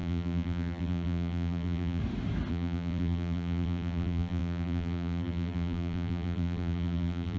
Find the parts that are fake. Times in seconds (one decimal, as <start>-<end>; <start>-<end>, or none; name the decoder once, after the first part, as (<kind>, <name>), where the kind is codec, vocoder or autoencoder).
0.0-2.0 (vocoder, BigVGAN v2); 2.5-7.4